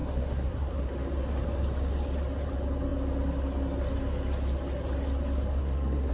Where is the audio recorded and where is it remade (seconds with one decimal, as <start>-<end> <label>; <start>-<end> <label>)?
0.0-0.9 remade; 0.9-5.6 recorded; 5.6-6.1 remade